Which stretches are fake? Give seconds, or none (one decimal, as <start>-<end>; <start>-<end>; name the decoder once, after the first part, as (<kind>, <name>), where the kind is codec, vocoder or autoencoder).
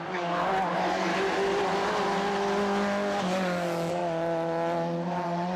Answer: 0.0-1.1 (codec, DAC); 3.2-4.0